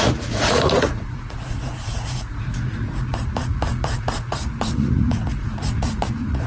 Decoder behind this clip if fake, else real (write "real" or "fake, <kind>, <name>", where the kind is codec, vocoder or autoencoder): fake, vocoder, Vocos